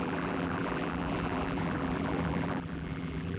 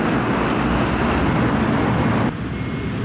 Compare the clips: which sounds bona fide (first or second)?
second